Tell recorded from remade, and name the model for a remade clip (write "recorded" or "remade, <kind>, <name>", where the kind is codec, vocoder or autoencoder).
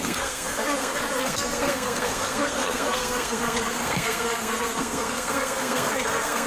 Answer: remade, codec, SNAC